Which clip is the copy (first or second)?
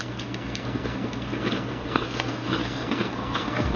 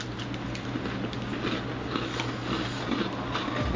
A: first